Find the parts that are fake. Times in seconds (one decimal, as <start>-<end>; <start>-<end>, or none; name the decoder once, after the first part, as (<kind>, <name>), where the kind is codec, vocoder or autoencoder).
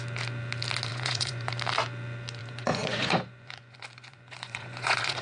0.9-1.5 (vocoder, Vocos); 2.4-5.2